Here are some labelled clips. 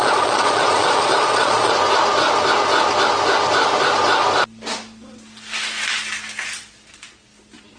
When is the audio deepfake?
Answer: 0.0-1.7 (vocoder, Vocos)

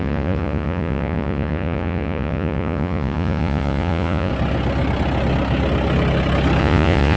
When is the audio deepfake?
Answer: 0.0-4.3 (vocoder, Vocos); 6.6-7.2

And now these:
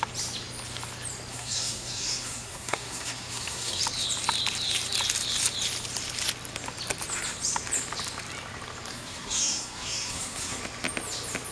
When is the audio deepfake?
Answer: 1.3-3.8 (codec, SNAC); 8.9-10.6

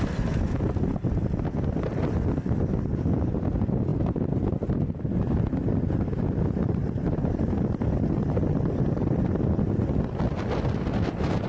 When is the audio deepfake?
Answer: none

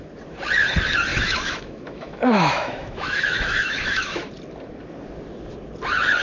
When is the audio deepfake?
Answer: 1.1-4.3 (autoencoder, DAC-VAE)

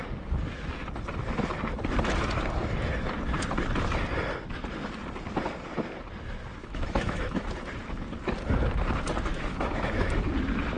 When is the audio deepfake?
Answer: 6.6-7.5 (autoencoder, DAC-VAE); 9.3-10.1

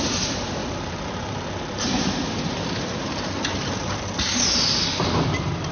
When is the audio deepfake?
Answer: 0.6-4.0 (vocoder, BigVGAN v2)